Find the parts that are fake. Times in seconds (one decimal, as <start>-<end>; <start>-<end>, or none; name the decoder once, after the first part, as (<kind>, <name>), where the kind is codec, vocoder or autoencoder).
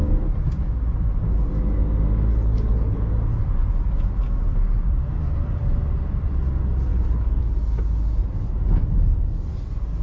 2.3-3.0 (codec, HILCodec); 6.9-7.4